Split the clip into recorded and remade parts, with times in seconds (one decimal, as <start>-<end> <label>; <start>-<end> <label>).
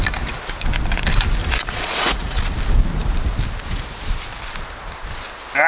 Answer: 0.0-1.4 recorded; 1.4-2.4 remade; 2.4-5.7 recorded